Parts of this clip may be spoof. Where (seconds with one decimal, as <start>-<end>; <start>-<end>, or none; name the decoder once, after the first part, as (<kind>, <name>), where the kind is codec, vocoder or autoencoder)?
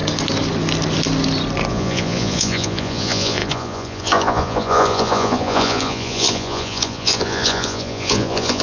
1.7-8.6 (vocoder, Vocos)